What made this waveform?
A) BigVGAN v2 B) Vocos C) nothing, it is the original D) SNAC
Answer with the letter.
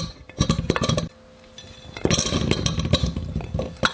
C